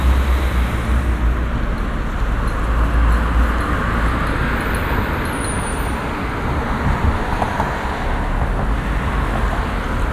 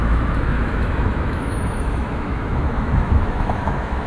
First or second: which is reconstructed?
second